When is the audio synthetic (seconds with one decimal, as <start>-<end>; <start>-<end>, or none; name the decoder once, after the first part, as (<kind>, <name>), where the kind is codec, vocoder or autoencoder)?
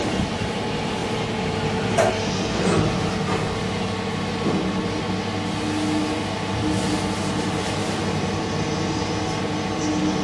none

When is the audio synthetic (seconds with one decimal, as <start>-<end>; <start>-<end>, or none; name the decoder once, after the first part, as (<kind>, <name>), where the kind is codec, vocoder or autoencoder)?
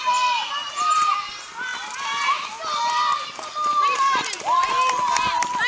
none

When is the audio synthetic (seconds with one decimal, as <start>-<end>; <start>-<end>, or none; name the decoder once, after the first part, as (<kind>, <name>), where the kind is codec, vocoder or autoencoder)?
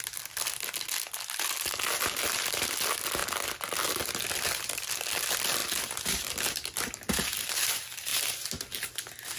none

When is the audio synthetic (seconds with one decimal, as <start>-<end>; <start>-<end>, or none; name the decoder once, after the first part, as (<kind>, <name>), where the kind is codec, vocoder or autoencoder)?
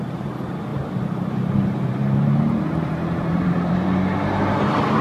0.7-3.7 (vocoder, BigVGAN v2)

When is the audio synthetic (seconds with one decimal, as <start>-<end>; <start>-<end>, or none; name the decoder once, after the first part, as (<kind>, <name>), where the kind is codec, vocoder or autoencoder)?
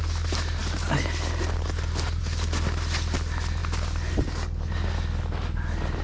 none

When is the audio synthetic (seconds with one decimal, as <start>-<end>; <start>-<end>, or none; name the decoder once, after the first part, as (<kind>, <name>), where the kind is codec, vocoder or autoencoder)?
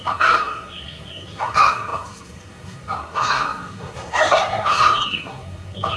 0.0-6.0 (codec, SNAC)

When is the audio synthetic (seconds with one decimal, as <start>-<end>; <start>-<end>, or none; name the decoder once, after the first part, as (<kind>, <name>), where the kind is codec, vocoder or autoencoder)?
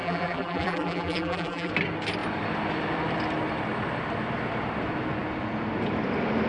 0.0-1.7 (vocoder, BigVGAN v2)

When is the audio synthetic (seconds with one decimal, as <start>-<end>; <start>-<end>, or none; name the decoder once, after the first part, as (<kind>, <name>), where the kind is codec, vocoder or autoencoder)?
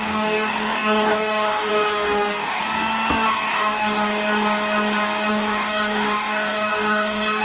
0.0-2.6 (codec, DAC); 3.3-4.1; 5.3-7.4